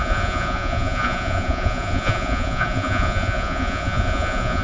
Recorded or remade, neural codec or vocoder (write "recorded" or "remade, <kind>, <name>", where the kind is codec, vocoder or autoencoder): remade, vocoder, Vocos